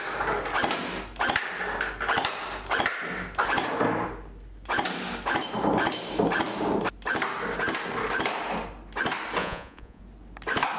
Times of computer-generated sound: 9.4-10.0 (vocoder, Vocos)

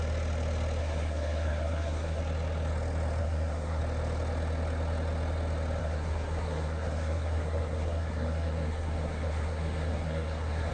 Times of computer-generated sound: 0.8-2.2 (codec, SNAC); 3.2-3.8; 5.8-10.7

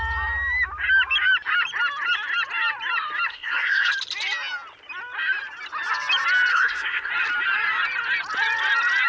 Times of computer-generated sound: 3.3-3.9 (codec, SNAC); 6.5-7.1

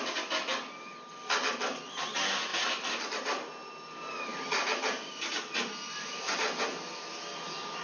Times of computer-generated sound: none

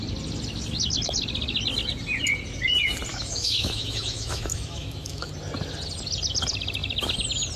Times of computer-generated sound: 3.1-5.3 (autoencoder, DAC-VAE)

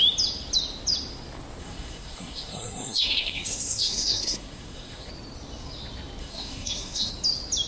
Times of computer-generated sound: 1.6-5.1 (codec, SNAC); 6.2-7.1